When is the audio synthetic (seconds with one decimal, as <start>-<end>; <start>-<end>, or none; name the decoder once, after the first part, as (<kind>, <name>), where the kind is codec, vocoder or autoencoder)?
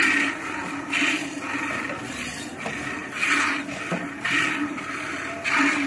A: 0.6-1.4 (vocoder, BigVGAN v2); 3.0-4.0